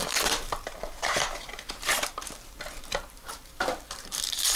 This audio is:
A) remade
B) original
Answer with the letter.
A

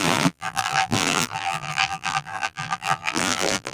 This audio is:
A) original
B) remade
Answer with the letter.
B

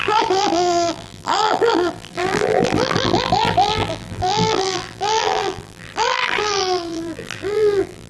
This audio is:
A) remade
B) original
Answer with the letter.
A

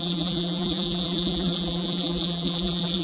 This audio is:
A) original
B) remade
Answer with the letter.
B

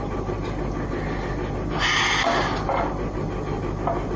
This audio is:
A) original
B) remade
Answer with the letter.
A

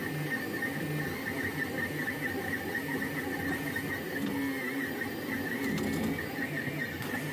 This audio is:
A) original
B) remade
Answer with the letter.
A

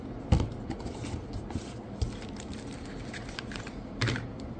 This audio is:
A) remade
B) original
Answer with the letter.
A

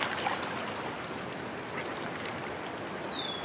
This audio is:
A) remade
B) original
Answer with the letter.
B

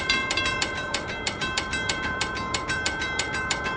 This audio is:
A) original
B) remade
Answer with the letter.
B